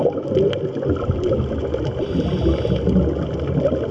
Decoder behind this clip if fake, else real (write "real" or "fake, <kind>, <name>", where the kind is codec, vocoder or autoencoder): real